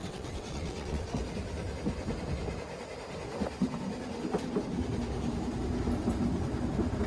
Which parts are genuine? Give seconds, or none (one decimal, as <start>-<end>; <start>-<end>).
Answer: 1.2-7.1